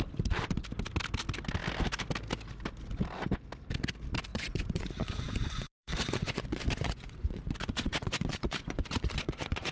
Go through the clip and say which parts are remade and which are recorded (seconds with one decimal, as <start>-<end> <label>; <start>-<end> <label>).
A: 0.0-4.3 recorded; 4.3-9.7 remade